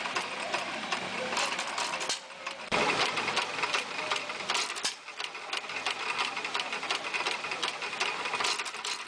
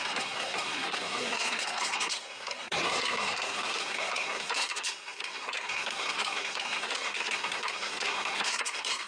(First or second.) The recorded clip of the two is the first